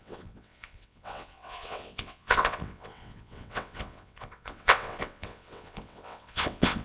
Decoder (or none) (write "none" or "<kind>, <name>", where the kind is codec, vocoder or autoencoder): vocoder, WaveNeXt